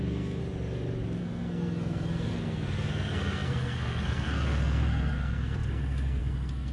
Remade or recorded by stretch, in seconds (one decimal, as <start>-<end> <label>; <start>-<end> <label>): 0.0-0.4 remade; 0.4-1.2 recorded; 1.2-6.7 remade